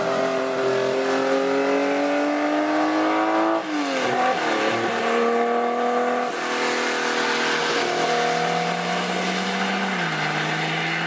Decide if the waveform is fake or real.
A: real